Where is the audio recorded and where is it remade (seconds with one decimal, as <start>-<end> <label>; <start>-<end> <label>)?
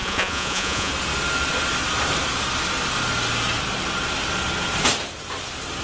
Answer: 0.0-0.9 remade; 0.9-5.8 recorded